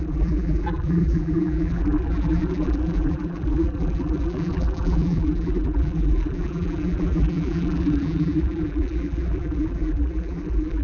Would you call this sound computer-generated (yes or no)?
yes